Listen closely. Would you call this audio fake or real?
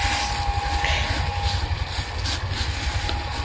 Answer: real